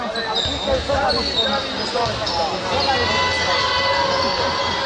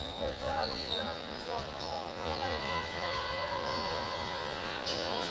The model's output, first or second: second